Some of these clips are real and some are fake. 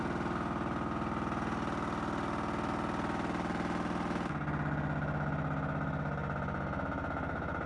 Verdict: real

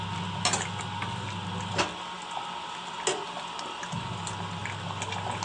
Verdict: real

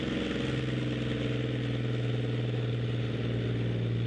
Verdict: real